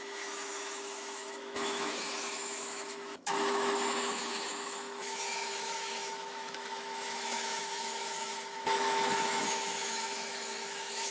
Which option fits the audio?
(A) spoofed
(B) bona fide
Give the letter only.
A